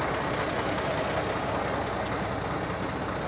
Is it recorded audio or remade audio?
recorded